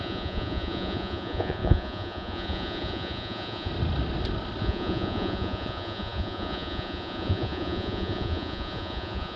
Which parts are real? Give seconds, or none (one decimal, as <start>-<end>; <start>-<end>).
3.7-4.6